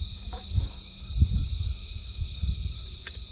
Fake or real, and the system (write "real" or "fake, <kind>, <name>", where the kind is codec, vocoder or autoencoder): fake, codec, DAC